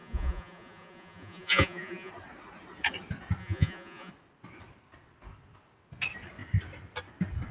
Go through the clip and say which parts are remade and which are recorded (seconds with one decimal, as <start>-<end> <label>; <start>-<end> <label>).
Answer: 0.0-2.1 remade; 2.1-3.4 recorded; 3.4-4.1 remade; 4.1-7.5 recorded